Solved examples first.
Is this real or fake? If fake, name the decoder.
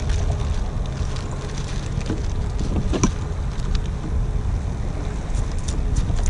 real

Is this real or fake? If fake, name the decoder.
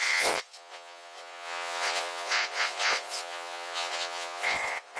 fake, vocoder, Vocos